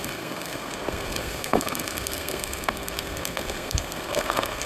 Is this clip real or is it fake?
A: fake